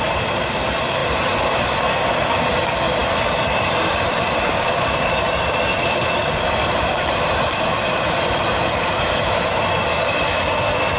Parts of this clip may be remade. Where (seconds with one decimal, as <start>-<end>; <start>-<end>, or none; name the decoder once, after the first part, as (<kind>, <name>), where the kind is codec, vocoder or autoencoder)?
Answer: 1.0-1.6 (vocoder, BigVGAN v2); 5.7-8.5